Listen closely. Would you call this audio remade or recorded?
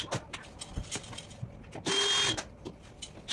recorded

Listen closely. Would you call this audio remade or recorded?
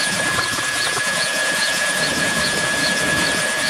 remade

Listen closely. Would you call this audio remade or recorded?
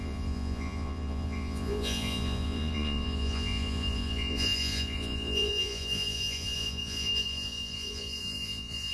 remade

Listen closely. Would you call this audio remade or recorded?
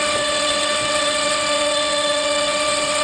remade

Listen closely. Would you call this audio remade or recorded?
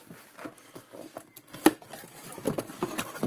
remade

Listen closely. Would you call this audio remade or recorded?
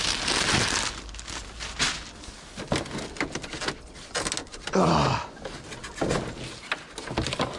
recorded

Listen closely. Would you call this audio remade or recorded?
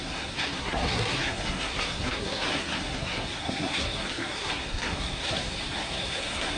remade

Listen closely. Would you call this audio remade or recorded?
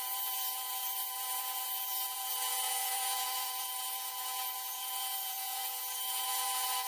remade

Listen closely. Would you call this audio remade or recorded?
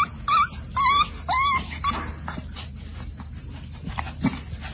recorded